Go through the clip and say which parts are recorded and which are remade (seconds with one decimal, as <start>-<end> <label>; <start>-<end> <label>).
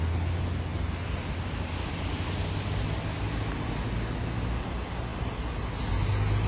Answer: 0.0-6.5 recorded